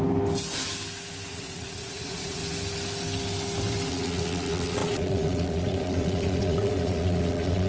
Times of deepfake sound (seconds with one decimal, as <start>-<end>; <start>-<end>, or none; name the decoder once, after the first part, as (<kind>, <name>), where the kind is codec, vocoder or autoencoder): 1.3-2.4 (vocoder, Vocos); 3.9-7.7